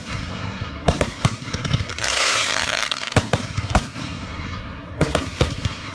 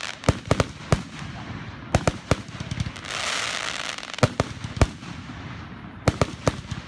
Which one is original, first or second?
second